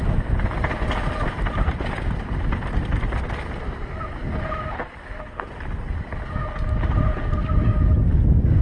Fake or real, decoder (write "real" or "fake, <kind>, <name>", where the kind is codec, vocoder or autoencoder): real